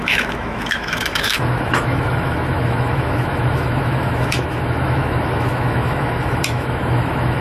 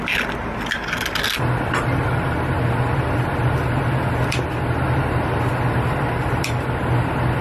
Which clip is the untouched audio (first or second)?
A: second